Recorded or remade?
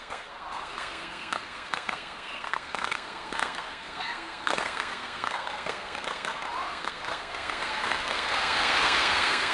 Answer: remade